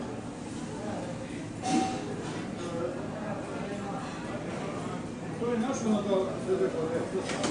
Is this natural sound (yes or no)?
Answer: yes